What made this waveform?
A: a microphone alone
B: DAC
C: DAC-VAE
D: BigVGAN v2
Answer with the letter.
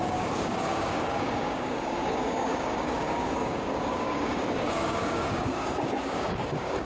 B